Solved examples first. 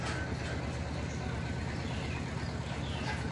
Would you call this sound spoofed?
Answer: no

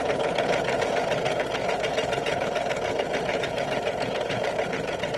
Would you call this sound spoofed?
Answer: yes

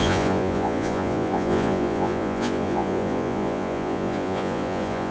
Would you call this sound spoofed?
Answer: yes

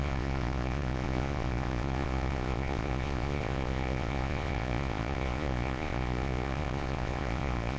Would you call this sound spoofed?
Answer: yes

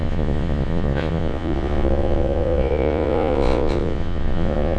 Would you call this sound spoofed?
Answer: yes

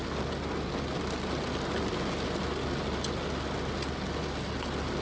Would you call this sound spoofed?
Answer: no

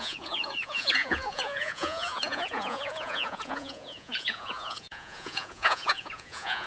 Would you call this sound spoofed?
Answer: yes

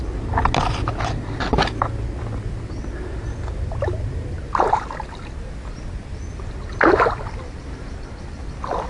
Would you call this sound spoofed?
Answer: no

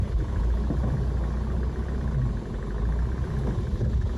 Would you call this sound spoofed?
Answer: no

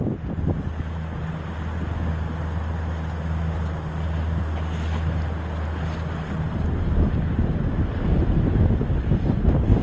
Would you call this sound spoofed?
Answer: no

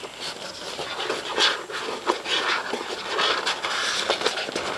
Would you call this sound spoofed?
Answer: no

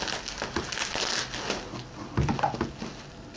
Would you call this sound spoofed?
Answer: no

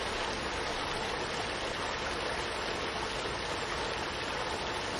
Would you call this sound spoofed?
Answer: no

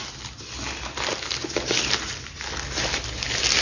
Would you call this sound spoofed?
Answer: no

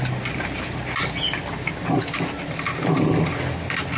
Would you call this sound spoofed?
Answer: no